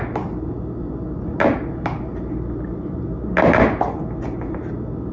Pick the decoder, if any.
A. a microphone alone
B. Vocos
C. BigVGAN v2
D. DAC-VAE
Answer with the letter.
A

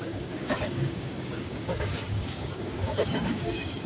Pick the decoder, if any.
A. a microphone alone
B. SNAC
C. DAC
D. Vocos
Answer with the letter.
C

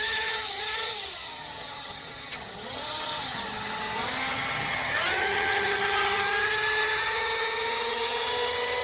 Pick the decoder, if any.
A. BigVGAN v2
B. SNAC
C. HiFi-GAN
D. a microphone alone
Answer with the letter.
C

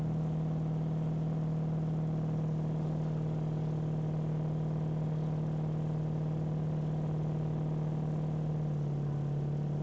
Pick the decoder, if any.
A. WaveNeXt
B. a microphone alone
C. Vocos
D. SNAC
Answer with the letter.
B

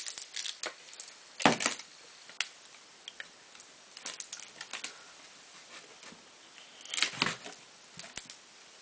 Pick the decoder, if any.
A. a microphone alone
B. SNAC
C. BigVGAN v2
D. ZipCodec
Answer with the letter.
A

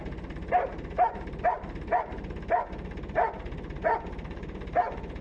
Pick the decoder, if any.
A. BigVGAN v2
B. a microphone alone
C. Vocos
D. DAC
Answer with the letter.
A